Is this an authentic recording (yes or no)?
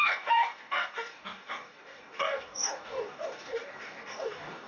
no